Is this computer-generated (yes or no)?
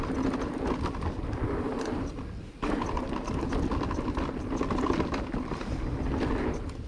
no